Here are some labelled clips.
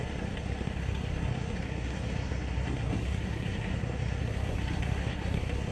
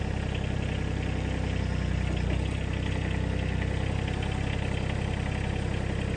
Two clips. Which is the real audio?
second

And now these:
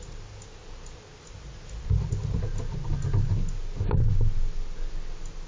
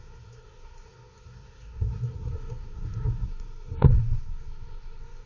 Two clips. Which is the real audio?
first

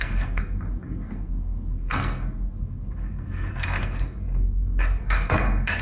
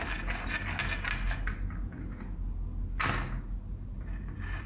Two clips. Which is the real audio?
second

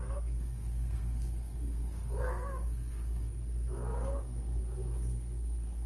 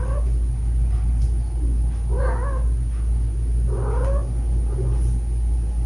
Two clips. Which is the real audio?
second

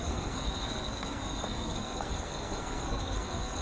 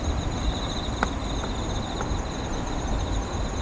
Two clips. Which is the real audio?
second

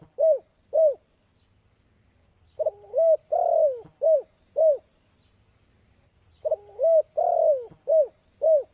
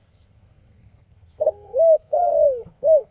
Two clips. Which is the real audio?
first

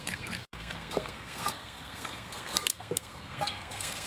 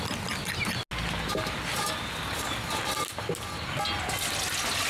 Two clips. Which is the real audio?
second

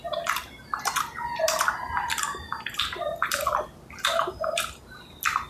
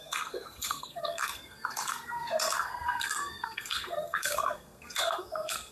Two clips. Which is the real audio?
first